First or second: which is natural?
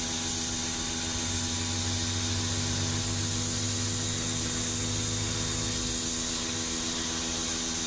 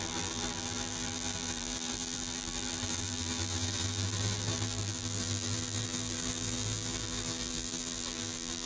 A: first